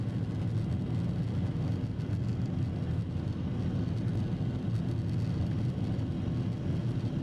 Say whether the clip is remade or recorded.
recorded